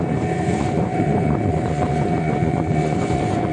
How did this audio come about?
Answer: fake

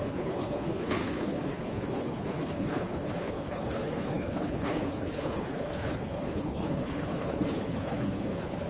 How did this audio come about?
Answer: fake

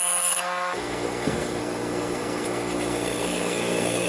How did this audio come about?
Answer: fake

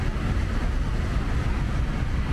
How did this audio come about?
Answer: real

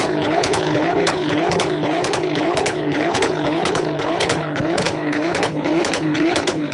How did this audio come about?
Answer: fake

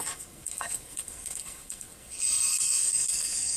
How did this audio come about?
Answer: fake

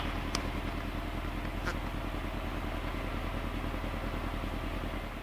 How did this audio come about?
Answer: real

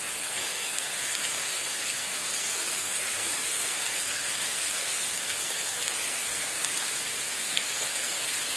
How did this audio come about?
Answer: fake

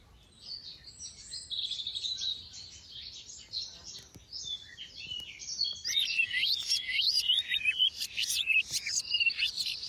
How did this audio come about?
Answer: real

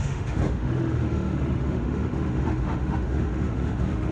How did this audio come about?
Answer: fake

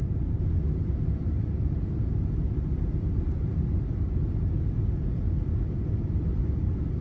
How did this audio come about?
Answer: fake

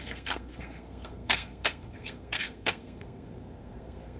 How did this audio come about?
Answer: fake